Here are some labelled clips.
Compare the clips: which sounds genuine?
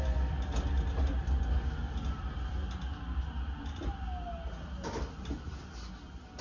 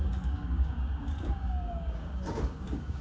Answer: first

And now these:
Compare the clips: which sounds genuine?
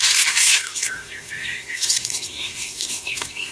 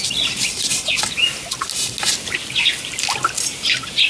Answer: second